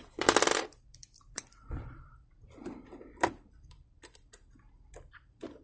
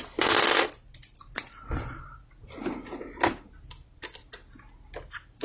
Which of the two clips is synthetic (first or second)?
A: first